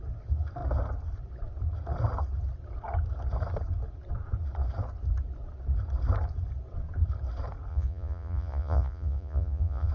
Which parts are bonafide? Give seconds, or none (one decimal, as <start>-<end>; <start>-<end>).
0.0-7.7